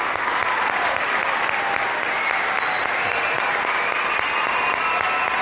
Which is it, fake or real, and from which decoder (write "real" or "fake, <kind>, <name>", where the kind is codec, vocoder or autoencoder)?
real